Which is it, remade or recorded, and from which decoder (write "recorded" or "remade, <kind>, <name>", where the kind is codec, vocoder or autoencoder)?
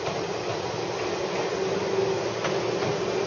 recorded